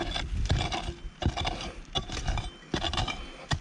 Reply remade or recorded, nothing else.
recorded